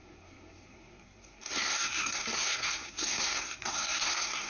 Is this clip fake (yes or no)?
yes